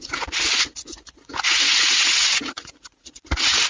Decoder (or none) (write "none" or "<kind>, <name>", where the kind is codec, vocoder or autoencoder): vocoder, Vocos